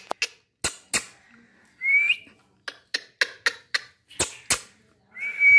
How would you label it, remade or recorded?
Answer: recorded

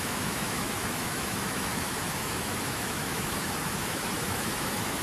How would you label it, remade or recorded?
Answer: remade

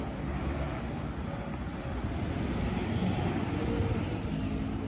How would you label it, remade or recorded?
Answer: recorded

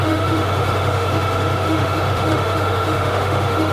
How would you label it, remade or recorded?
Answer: remade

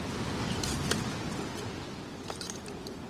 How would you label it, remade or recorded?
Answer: recorded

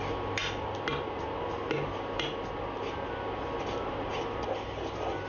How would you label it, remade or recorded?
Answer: recorded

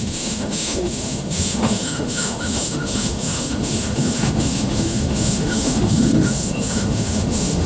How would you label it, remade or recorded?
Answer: remade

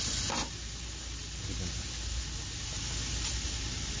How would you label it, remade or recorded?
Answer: recorded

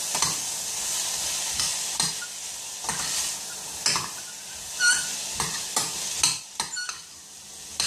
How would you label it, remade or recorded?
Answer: recorded